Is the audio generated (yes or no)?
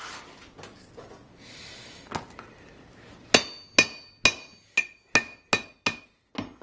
no